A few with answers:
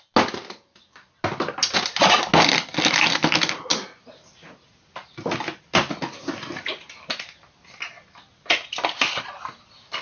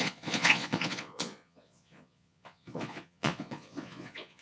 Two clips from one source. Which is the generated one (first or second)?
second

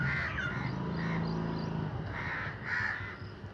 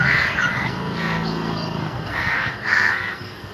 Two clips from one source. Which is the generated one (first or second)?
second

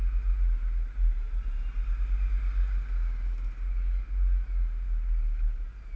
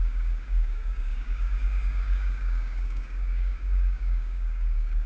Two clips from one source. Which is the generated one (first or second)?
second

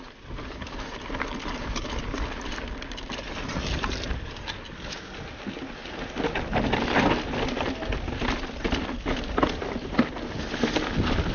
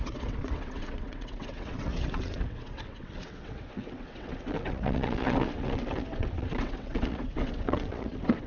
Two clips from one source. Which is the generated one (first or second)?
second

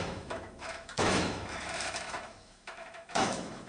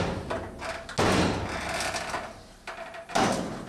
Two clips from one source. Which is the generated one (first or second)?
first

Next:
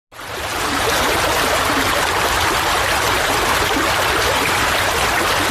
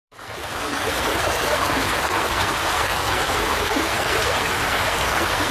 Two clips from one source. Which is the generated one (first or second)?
second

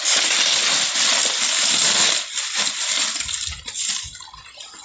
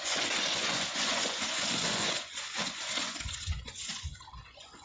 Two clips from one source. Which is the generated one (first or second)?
second